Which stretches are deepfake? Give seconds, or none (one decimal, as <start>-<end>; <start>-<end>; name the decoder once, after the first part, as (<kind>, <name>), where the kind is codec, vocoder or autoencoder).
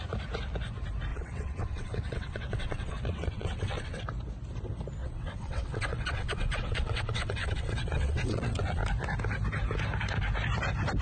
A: 1.1-4.0 (vocoder, WaveNeXt); 5.0-8.8